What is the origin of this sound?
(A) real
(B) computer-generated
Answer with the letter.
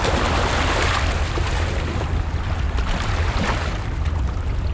A